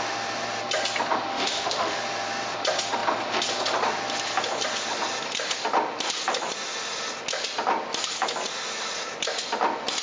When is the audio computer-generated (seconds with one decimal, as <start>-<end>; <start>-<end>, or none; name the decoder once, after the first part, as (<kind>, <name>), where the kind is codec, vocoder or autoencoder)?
1.3-2.0 (autoencoder, DAC-VAE)